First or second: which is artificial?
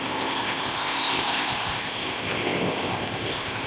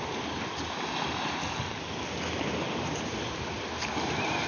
first